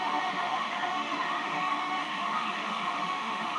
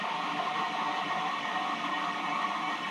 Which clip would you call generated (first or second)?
first